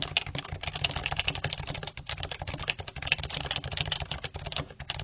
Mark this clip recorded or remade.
recorded